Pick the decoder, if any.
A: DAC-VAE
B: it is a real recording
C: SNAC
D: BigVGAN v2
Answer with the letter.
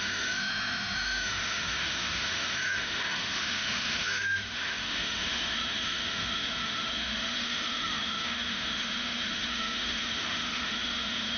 A